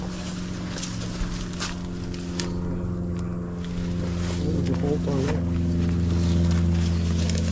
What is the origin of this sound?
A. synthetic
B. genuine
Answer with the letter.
B